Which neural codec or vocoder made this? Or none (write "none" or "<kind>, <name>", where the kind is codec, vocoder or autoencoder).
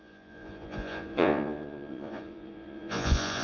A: vocoder, Vocos